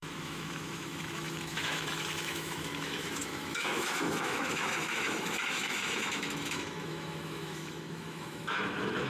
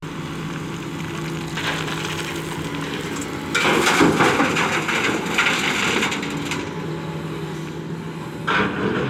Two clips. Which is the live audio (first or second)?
second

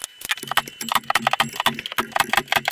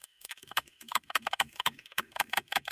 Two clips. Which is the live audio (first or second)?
first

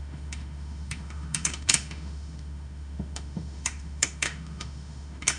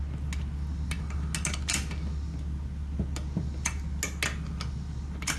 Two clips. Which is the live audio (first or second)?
second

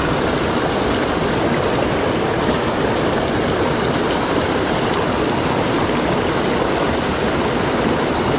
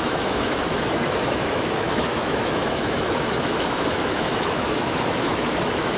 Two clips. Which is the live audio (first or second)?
first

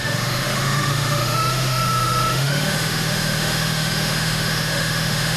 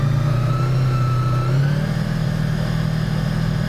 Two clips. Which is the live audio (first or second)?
second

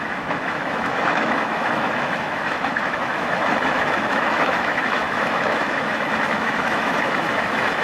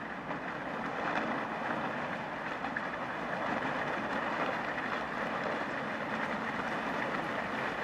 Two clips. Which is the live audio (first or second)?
second